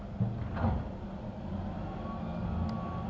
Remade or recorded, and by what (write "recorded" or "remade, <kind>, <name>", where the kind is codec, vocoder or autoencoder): recorded